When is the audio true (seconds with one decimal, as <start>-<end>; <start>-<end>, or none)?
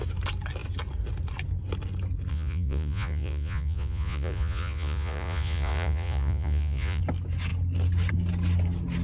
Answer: 0.0-2.3; 7.0-9.0